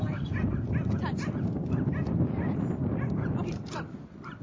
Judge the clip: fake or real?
real